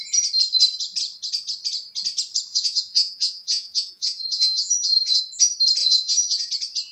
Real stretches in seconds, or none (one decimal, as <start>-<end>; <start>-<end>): 0.0-2.5; 5.2-5.8; 6.5-6.9